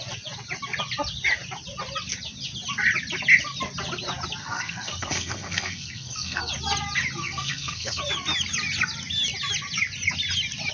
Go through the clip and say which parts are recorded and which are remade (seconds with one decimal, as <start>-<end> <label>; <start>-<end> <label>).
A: 0.0-4.4 recorded; 4.4-6.4 remade; 6.4-7.2 recorded; 7.2-8.0 remade; 8.0-10.7 recorded